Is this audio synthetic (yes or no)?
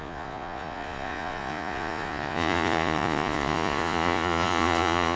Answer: yes